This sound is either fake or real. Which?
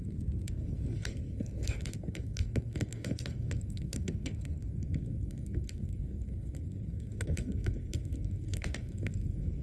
fake